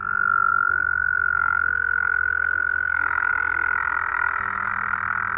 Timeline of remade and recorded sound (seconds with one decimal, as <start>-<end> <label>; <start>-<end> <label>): 0.0-0.5 recorded; 0.5-3.3 remade; 3.3-4.1 recorded; 4.1-4.7 remade; 4.7-5.4 recorded

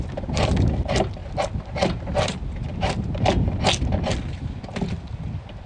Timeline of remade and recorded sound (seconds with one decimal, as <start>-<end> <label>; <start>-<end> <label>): 0.0-5.7 recorded

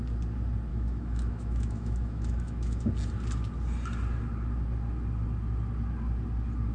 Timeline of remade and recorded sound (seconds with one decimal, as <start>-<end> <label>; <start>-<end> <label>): 0.0-0.7 recorded; 0.7-2.9 remade; 2.9-6.7 recorded

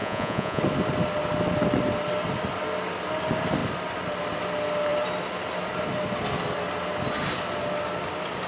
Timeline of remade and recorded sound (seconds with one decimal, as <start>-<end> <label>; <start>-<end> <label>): 0.0-0.6 remade; 0.6-8.5 recorded

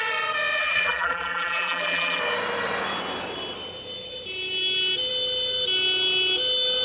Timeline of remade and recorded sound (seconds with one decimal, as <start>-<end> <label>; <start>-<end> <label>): 0.0-0.6 recorded; 0.6-2.2 remade; 2.2-6.8 recorded